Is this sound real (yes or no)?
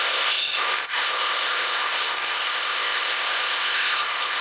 no